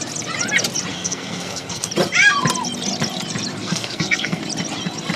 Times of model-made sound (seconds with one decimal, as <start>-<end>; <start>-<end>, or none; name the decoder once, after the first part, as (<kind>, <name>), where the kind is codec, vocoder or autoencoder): 0.9-1.9 (codec, SNAC); 3.6-4.4